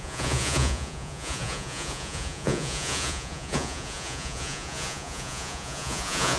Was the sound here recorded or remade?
remade